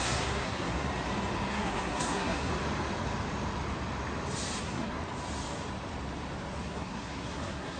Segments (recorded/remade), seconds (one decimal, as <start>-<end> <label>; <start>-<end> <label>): 0.0-0.9 remade; 0.9-1.5 recorded; 1.5-2.5 remade; 2.5-4.6 recorded; 4.6-5.0 remade; 5.0-6.6 recorded; 6.6-7.8 remade